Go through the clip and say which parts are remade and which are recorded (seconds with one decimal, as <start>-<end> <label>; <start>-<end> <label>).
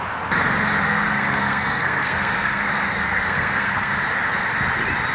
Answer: 0.0-0.8 recorded; 0.8-3.9 remade; 3.9-5.1 recorded